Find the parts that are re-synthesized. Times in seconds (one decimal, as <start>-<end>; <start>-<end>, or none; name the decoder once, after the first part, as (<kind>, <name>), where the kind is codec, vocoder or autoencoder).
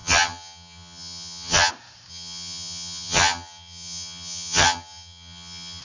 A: 0.0-1.7 (vocoder, HiFi-GAN); 2.1-5.8